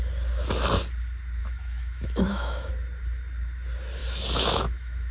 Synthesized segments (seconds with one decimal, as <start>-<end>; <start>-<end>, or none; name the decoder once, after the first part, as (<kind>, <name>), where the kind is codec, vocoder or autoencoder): 1.4-2.7 (autoencoder, DAC-VAE); 4.0-5.1